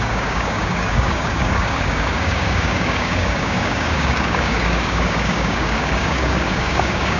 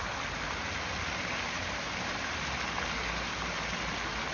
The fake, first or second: first